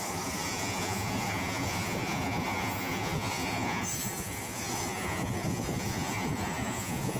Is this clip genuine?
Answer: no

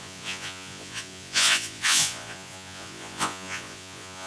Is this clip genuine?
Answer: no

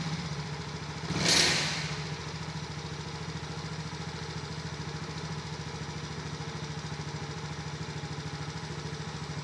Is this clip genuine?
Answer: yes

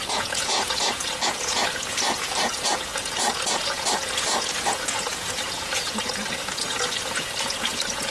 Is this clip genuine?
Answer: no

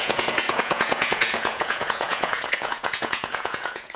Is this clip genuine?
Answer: no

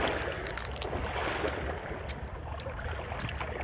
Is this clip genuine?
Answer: yes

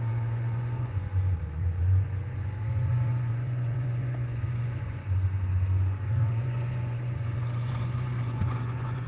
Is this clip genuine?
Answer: no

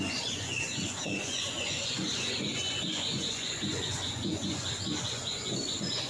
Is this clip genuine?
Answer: no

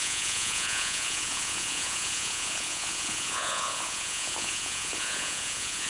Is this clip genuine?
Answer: no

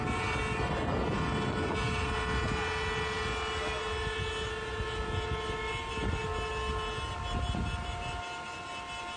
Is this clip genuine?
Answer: yes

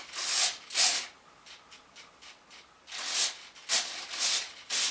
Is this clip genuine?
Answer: yes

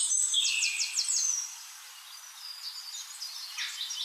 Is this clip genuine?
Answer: yes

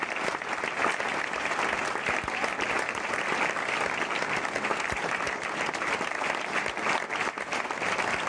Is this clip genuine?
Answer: yes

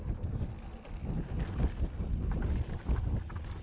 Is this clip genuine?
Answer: yes